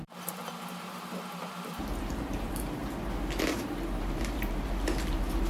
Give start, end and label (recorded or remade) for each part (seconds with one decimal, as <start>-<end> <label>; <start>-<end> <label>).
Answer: 0.0-2.8 remade; 2.8-3.5 recorded; 3.5-5.5 remade